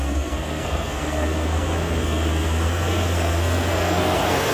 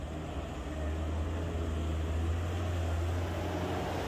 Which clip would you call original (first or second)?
second